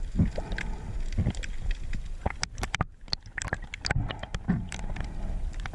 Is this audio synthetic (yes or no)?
no